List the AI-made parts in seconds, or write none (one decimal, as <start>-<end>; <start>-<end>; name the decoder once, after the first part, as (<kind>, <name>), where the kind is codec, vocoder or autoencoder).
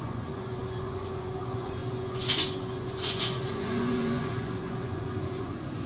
0.0-5.9 (vocoder, Vocos)